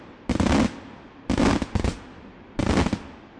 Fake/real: real